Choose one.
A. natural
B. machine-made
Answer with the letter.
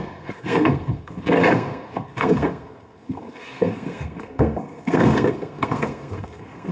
B